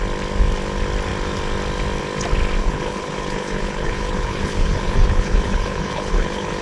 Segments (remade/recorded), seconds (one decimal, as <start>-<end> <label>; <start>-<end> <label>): 0.0-2.6 recorded; 2.6-6.6 remade